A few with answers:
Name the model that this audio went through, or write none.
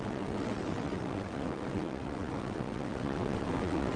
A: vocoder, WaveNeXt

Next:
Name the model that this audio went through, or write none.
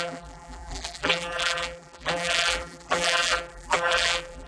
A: vocoder, BigVGAN v2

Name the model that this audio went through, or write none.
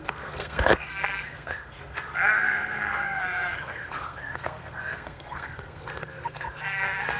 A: codec, SNAC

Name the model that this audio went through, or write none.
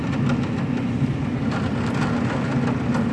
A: none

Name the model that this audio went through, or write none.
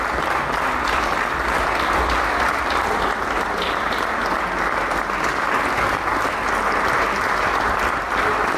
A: none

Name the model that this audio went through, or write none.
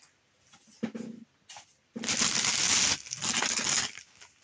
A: none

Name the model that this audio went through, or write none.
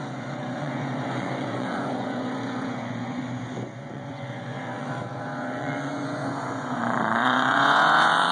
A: vocoder, Vocos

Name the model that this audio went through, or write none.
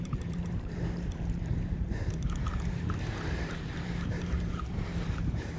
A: vocoder, BigVGAN v2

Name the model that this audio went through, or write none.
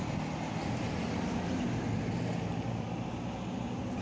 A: none